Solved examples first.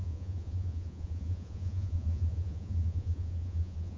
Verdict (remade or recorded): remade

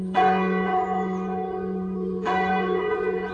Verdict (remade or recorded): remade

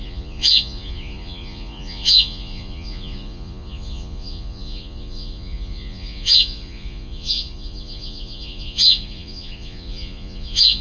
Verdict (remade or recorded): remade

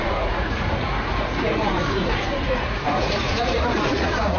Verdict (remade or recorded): remade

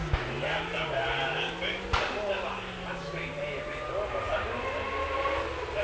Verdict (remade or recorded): recorded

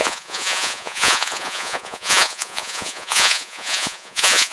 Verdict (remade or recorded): remade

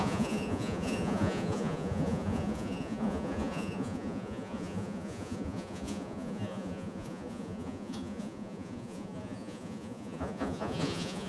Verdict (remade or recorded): remade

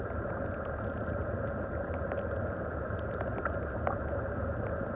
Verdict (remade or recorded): recorded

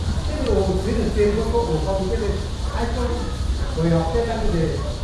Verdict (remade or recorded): recorded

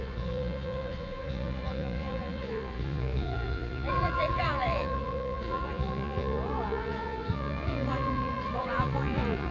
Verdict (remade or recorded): remade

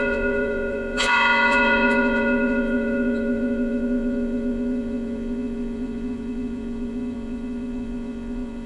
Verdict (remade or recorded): remade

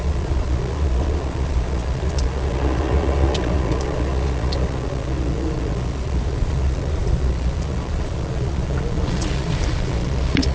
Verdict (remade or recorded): remade